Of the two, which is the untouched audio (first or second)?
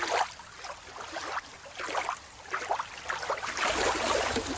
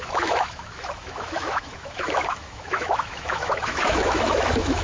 first